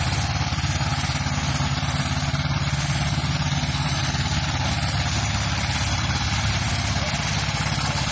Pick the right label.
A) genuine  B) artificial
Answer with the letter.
A